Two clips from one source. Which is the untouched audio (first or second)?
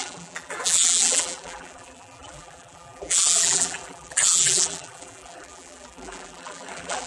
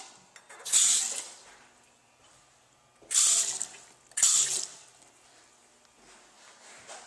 second